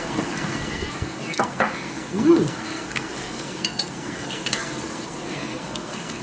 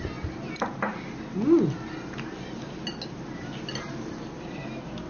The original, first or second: second